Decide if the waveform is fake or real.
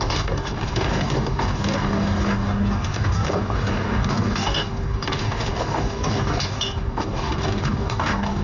fake